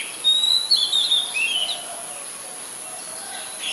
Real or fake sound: real